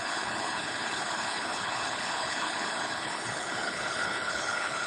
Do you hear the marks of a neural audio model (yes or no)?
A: yes